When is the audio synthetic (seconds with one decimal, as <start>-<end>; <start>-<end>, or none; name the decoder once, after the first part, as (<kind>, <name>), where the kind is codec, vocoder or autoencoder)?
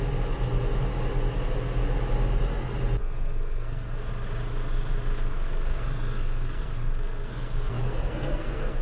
3.0-4.1 (codec, SNAC); 5.3-8.8